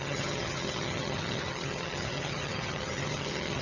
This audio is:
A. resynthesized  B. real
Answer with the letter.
A